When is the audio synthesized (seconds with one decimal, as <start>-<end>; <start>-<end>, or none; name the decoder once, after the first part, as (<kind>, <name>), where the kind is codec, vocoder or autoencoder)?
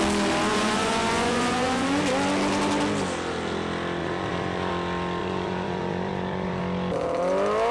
0.5-2.0 (vocoder, Vocos); 4.0-4.7; 5.2-6.6